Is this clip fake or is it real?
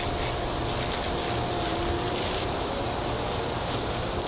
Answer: real